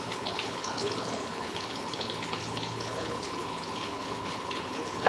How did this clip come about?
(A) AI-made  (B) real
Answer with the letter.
A